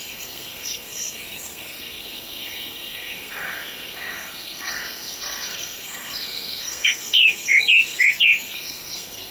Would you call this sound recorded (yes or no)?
no